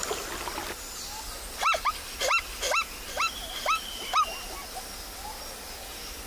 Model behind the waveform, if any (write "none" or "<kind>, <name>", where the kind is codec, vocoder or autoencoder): none